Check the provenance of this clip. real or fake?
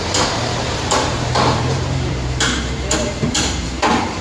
fake